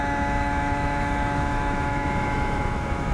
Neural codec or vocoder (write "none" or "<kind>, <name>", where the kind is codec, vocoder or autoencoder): autoencoder, DAC-VAE